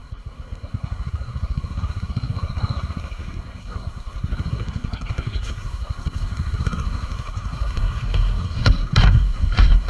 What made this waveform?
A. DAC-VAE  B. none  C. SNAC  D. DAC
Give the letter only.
C